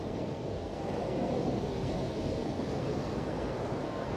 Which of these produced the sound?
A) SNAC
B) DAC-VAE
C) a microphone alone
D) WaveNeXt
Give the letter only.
A